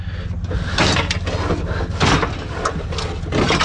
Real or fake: real